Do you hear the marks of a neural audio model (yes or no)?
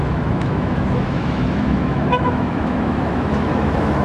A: yes